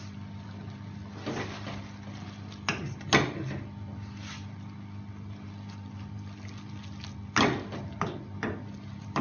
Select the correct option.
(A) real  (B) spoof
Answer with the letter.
A